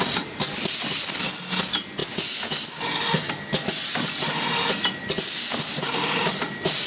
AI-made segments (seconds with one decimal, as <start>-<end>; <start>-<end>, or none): none